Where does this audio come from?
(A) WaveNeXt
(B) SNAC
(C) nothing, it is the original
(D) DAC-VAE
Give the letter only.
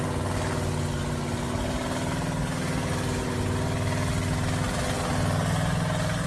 C